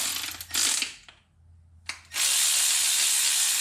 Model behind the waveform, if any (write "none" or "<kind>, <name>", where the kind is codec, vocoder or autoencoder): none